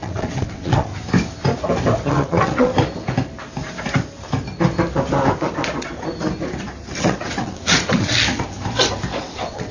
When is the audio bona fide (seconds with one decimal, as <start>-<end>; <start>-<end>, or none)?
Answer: 0.9-2.1; 2.7-7.0; 8.1-9.2